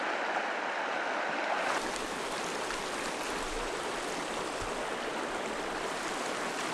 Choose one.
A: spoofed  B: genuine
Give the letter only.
B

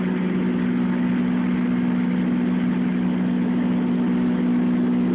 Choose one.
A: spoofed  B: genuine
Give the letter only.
B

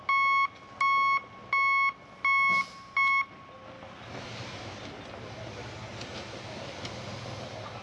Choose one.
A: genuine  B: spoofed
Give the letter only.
A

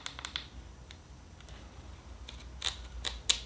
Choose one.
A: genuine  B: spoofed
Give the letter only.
A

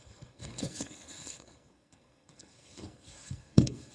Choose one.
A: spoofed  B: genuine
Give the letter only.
A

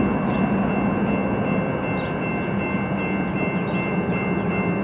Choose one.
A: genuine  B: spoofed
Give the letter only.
A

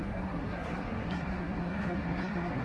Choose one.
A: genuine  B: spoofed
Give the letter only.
B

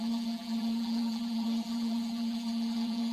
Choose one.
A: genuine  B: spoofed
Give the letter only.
B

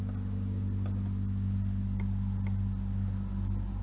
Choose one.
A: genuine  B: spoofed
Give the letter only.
A